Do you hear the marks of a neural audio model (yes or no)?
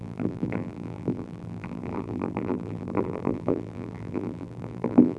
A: yes